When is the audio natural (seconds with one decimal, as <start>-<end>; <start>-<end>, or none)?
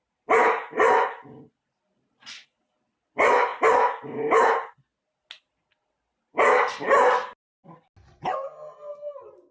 0.0-9.5